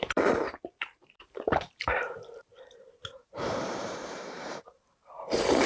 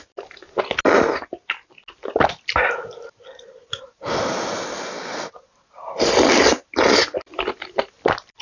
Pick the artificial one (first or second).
first